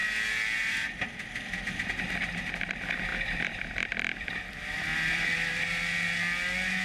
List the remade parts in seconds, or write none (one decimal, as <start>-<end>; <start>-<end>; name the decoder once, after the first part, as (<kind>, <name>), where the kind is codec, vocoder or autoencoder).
3.1-5.6 (vocoder, BigVGAN v2)